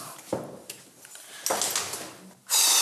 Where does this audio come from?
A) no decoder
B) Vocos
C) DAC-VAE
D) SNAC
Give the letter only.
A